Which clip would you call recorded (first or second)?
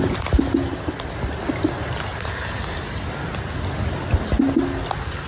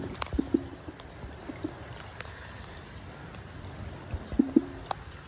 first